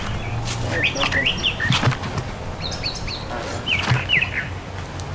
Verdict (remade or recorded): recorded